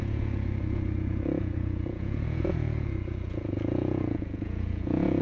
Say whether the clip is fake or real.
fake